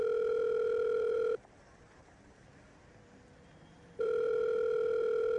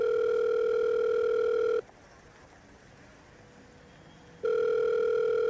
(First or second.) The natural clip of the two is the second